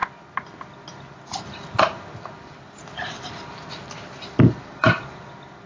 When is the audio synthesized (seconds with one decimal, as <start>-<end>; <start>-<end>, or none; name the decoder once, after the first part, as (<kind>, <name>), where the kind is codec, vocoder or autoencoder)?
1.9-5.3 (vocoder, BigVGAN v2)